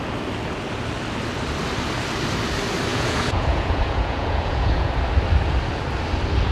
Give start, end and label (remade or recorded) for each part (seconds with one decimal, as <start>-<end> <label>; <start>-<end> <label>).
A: 0.0-2.9 recorded; 2.9-4.9 remade; 4.9-6.5 recorded